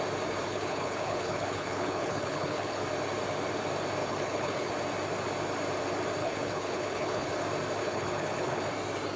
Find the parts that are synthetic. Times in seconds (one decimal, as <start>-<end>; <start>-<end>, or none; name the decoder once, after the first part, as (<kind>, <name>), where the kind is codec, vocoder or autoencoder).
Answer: 0.5-2.8 (codec, HILCodec); 4.0-4.7; 6.2-7.3; 7.8-8.6